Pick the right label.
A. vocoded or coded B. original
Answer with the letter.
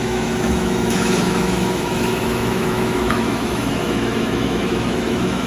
A